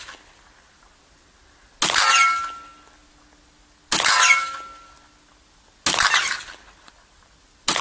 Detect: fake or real real